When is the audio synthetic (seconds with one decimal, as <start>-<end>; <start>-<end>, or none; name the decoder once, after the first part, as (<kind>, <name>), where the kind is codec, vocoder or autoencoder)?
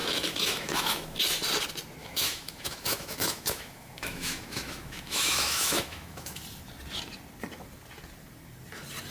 0.0-1.2 (autoencoder, DAC-VAE); 2.0-6.4